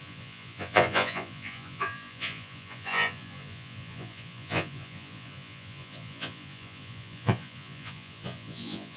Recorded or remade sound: remade